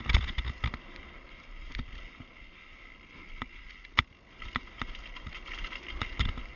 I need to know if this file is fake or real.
real